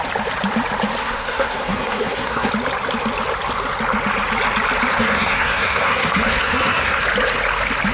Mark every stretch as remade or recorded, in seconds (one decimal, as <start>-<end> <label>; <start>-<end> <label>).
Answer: 0.0-1.0 recorded; 1.0-2.5 remade; 2.5-4.9 recorded; 4.9-7.0 remade; 7.0-7.9 recorded